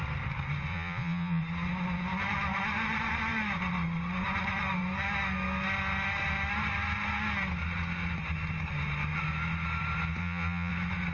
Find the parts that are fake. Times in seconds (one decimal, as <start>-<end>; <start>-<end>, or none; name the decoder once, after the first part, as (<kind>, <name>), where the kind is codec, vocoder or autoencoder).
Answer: 0.7-1.4 (vocoder, Vocos); 10.2-10.7